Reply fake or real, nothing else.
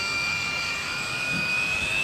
fake